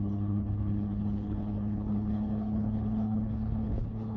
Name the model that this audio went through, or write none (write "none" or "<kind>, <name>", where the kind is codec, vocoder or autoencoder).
codec, HILCodec